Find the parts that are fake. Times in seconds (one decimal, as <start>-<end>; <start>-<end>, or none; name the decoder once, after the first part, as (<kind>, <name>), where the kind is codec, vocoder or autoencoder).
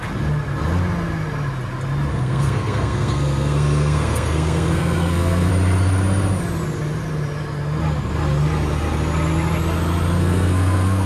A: 2.1-5.5 (codec, SNAC); 10.2-11.1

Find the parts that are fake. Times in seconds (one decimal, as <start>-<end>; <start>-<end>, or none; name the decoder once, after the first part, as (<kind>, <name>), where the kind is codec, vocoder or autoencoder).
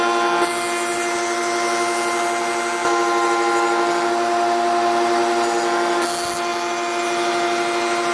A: none